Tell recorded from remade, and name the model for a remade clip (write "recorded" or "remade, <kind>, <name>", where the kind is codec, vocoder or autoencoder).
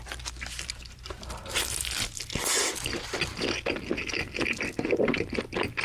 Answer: recorded